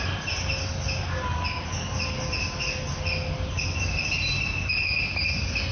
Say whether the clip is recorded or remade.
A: recorded